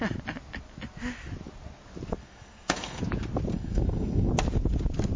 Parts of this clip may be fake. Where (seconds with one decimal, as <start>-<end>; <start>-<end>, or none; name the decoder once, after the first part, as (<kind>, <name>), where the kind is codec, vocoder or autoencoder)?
2.2-3.0 (codec, SNAC); 3.5-4.3